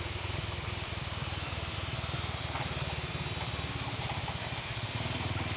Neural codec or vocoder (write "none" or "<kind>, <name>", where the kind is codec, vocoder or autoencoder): none